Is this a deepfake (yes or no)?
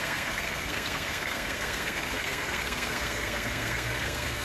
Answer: yes